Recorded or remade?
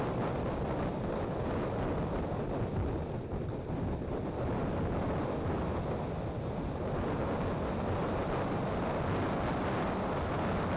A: recorded